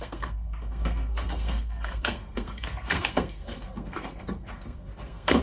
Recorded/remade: remade